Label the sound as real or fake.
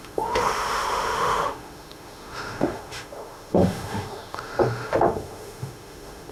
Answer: fake